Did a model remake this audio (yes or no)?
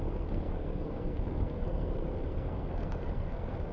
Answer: yes